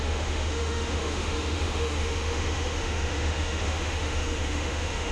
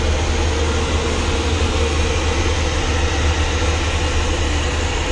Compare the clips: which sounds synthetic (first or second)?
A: first